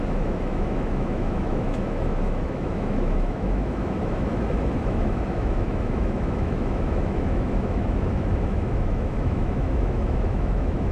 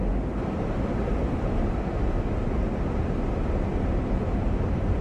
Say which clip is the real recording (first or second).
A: second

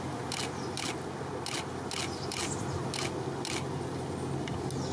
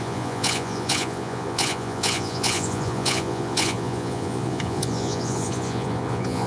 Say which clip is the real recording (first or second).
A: first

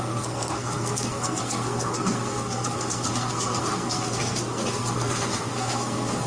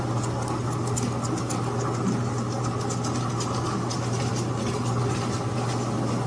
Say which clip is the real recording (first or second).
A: second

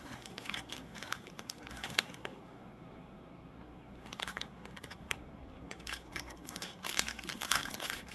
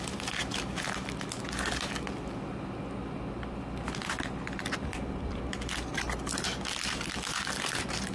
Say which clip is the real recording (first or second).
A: second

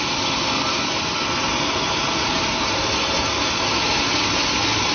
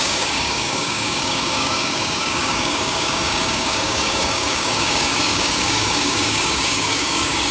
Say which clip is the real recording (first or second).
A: first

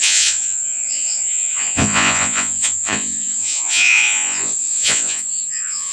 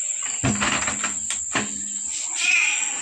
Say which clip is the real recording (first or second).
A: second